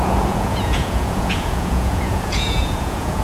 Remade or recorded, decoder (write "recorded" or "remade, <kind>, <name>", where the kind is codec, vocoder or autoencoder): remade, vocoder, Vocos